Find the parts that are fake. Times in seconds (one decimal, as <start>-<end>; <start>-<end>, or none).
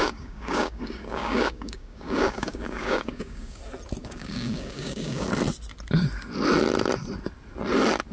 0.0-3.6; 4.0-5.3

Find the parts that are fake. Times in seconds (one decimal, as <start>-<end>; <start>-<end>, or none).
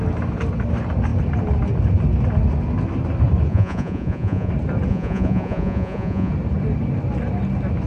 3.5-4.5; 4.9-6.3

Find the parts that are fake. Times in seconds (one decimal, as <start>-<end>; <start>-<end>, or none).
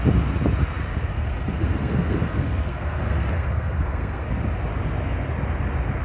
1.1-4.3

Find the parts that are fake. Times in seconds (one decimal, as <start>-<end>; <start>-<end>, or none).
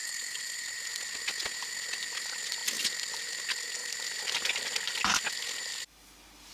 0.0-0.6